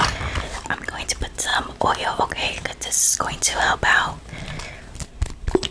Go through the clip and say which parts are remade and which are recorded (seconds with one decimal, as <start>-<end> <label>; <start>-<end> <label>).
0.0-5.7 recorded